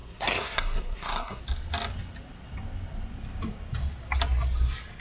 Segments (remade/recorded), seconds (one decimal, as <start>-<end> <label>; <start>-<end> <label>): 0.0-1.4 remade; 1.4-5.0 recorded